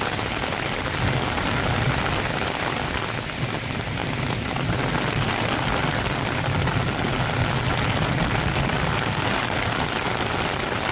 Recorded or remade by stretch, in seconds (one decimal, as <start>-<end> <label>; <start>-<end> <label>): 0.0-10.9 recorded